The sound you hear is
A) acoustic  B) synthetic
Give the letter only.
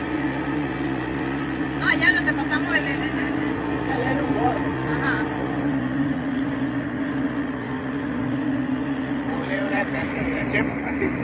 B